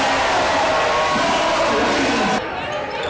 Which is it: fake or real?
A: real